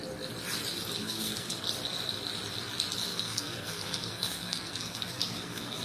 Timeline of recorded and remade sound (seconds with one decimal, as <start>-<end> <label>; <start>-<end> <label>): 0.0-1.0 recorded; 1.0-1.6 remade; 1.6-3.1 recorded; 3.1-5.8 remade